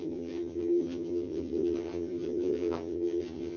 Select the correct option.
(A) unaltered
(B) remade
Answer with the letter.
B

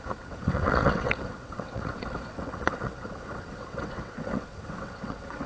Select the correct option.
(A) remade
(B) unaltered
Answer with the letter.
A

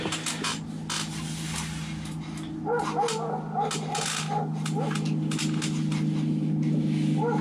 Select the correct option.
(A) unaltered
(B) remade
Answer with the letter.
A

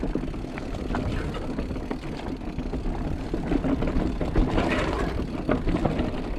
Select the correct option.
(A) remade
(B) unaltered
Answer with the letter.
B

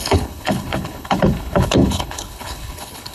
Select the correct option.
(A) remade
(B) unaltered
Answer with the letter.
A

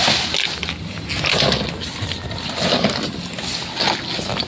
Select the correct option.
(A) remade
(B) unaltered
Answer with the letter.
B